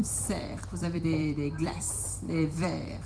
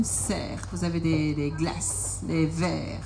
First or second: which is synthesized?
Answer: first